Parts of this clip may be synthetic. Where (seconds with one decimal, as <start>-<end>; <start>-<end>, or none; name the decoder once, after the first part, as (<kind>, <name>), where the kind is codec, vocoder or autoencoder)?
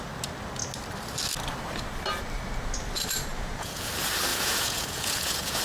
3.3-3.9 (vocoder, Vocos); 4.3-5.6